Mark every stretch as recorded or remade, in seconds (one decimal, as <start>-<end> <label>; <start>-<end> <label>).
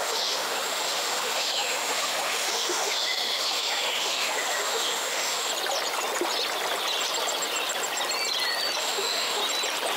0.0-5.5 remade; 5.5-8.8 recorded; 8.8-9.4 remade; 9.4-10.0 recorded